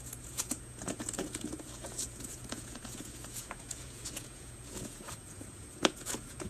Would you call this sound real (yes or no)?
no